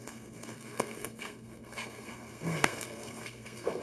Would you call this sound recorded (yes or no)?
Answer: no